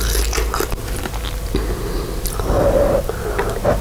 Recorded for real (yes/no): yes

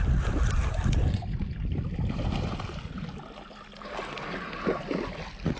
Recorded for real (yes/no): yes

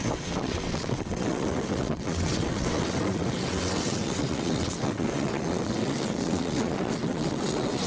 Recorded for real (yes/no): no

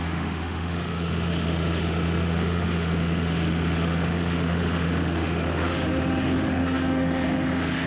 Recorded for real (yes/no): no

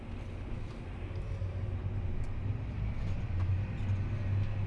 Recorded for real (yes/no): yes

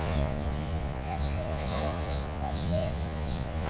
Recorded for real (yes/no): no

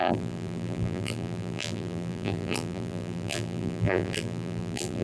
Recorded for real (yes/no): no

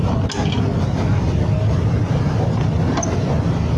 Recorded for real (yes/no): yes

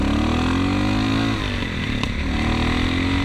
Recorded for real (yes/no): yes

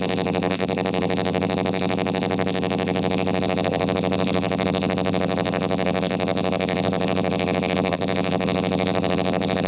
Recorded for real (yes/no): no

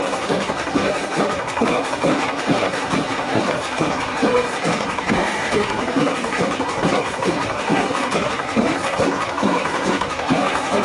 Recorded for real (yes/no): no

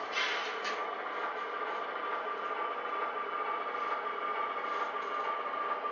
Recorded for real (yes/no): yes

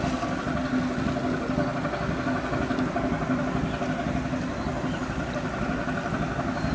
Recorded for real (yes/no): yes